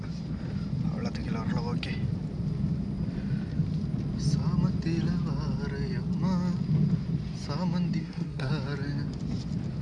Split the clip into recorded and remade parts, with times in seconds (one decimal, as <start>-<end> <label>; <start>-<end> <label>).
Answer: 0.0-8.0 recorded; 8.0-8.5 remade; 8.5-9.8 recorded